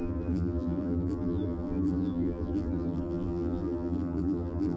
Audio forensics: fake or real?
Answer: fake